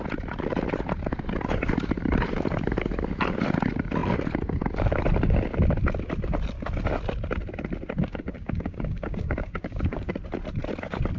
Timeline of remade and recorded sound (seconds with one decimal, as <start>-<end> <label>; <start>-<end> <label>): 0.0-8.0 recorded; 8.0-10.1 remade; 10.1-11.2 recorded